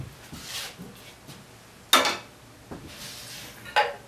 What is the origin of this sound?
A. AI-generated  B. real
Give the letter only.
B